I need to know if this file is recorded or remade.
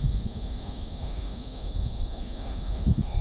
remade